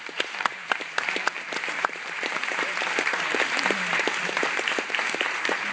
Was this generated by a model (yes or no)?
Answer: yes